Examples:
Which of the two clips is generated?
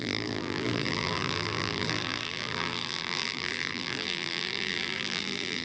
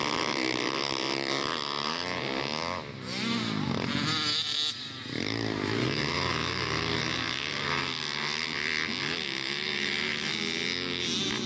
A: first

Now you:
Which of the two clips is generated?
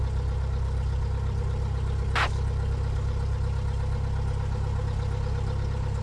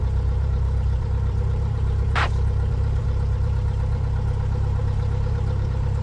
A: second